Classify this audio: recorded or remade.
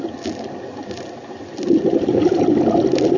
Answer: recorded